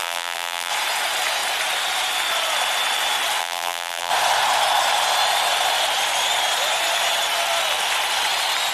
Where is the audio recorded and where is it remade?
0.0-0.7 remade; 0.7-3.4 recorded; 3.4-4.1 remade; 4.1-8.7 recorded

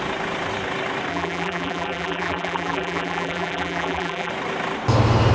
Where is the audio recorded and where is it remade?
0.0-1.1 recorded; 1.1-4.3 remade; 4.3-5.3 recorded

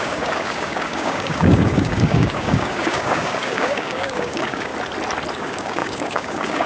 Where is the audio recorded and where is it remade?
0.0-4.7 remade; 4.7-5.3 recorded; 5.3-6.7 remade

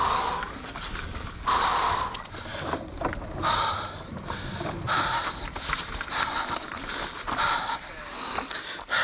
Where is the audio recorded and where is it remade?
0.0-1.5 remade; 1.5-8.0 recorded; 8.0-8.5 remade; 8.5-9.0 recorded

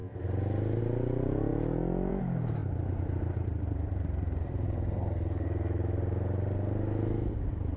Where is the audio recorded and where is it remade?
0.0-7.8 recorded

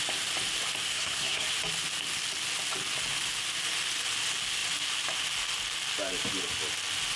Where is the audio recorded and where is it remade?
0.0-0.9 recorded; 0.9-1.5 remade; 1.5-7.2 recorded

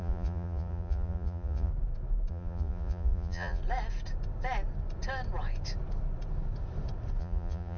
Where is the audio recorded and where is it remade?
0.0-1.7 remade; 1.7-2.3 recorded; 2.3-3.6 remade; 3.6-7.2 recorded; 7.2-7.8 remade

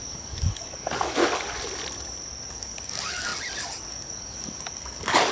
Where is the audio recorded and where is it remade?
0.0-1.2 remade; 1.2-2.5 recorded; 2.5-3.3 remade; 3.3-3.9 recorded; 3.9-5.3 remade